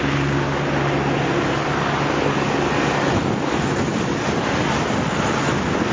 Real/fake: real